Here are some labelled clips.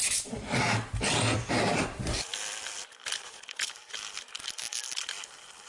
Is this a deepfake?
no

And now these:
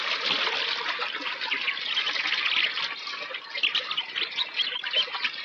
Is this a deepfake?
no